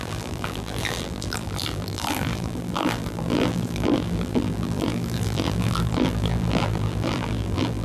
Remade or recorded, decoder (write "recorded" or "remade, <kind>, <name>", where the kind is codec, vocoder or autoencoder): remade, vocoder, BigVGAN v2